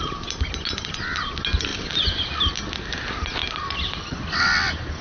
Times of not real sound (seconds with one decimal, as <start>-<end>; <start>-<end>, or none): 1.7-2.5; 3.4-5.0